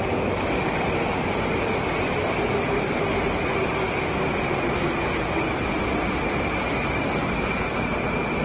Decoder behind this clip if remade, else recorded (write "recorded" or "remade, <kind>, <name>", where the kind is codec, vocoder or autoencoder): recorded